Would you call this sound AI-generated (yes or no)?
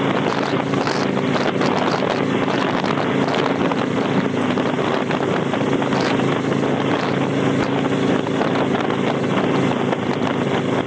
no